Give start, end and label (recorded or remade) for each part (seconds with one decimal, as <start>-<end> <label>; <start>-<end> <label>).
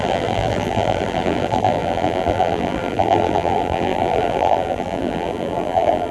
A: 0.0-6.1 remade